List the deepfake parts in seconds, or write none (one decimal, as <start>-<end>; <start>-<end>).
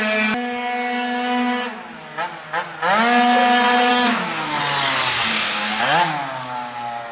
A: 3.9-4.6; 5.3-5.8